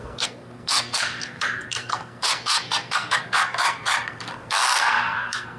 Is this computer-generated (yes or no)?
yes